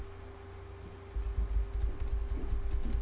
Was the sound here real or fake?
real